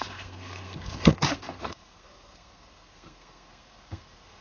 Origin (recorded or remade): remade